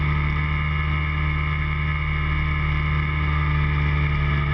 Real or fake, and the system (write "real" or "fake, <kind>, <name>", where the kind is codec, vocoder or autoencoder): real